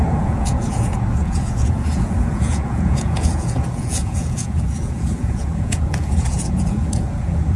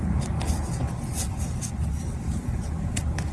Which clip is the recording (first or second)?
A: second